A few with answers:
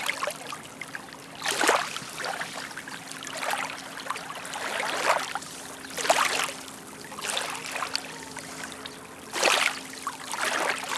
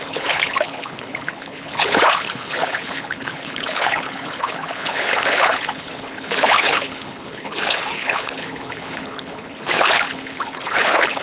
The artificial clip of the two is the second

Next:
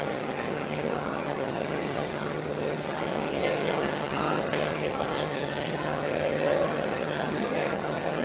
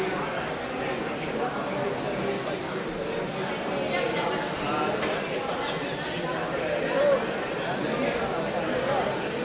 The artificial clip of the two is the first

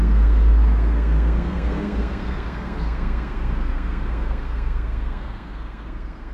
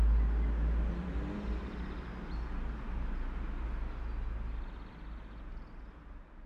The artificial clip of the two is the first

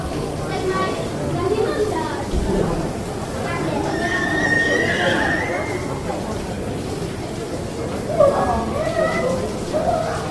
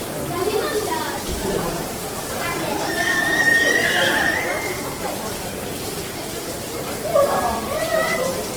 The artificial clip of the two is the second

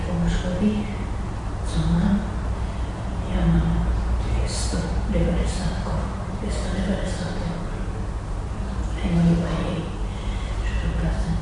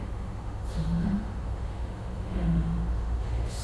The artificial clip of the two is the second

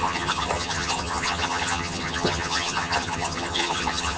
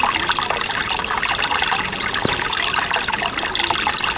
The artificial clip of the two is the first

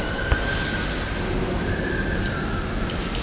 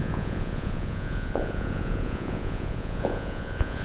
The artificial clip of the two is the second